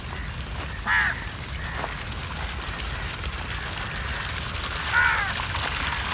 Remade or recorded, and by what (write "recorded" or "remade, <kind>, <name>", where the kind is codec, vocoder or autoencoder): recorded